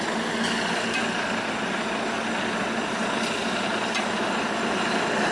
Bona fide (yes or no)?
yes